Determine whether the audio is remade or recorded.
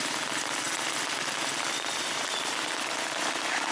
recorded